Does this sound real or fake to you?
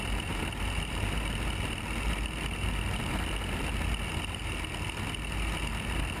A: real